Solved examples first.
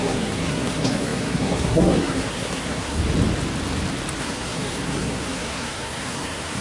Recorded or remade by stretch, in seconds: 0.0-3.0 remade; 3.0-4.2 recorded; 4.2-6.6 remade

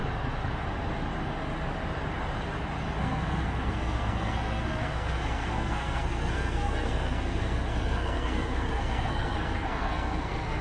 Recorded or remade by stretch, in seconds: 0.0-3.0 recorded; 3.0-10.6 remade

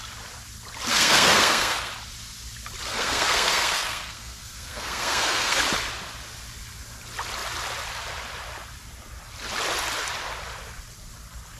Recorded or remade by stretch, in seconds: 0.0-0.9 recorded; 0.9-1.9 remade; 1.9-2.9 recorded; 2.9-5.6 remade; 5.6-11.6 recorded

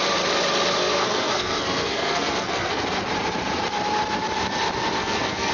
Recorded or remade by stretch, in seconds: 0.0-0.8 recorded; 0.8-2.8 remade; 2.8-5.0 recorded; 5.0-5.5 remade

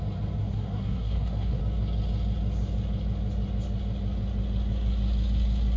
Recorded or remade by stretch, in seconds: 0.0-0.4 recorded; 0.4-1.6 remade; 1.6-5.8 recorded

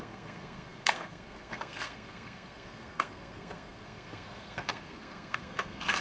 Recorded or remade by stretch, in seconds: 0.0-6.0 remade